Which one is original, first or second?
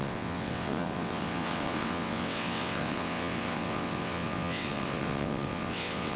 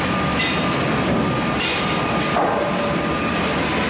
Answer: second